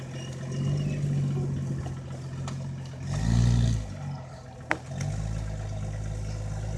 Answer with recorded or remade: recorded